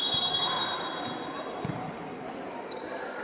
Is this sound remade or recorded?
recorded